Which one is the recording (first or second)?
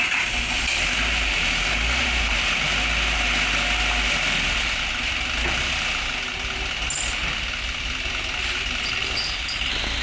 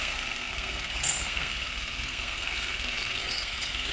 first